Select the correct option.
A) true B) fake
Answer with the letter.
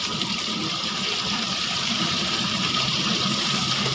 B